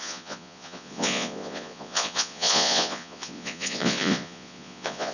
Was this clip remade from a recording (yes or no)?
yes